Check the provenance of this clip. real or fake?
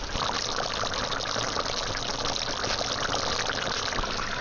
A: real